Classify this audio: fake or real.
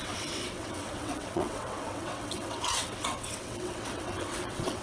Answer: fake